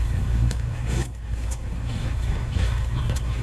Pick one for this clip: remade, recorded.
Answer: remade